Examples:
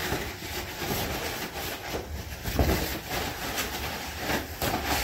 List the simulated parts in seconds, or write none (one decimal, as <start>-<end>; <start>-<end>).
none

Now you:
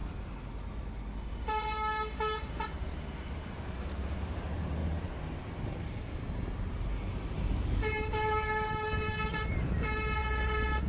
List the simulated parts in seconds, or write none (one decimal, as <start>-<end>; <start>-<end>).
2.8-4.8; 5.8-10.2

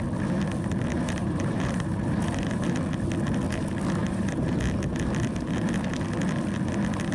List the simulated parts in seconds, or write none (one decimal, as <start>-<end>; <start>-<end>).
0.9-2.7; 4.0-4.6